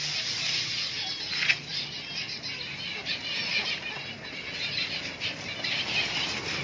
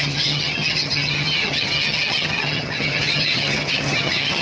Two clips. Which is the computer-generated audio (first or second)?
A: second